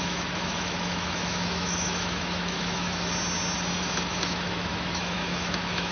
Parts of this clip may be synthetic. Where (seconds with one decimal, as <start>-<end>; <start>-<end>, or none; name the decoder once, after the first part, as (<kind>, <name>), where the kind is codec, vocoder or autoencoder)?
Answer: 0.0-3.1 (autoencoder, DAC-VAE); 3.8-5.9